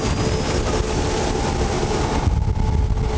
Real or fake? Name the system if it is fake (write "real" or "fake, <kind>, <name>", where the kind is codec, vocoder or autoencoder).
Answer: real